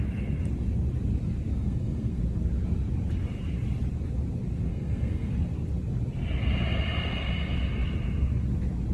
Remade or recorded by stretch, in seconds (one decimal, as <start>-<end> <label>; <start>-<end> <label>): 0.0-1.5 recorded; 1.5-2.2 remade; 2.2-4.7 recorded; 4.7-5.3 remade; 5.3-8.9 recorded